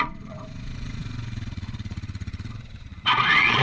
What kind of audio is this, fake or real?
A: fake